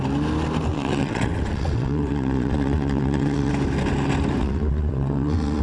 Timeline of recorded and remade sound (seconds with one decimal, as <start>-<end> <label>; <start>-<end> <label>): 0.0-0.7 recorded; 0.7-3.5 remade; 3.5-4.4 recorded; 4.4-5.6 remade